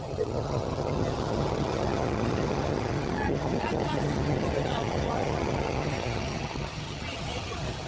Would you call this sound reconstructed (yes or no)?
yes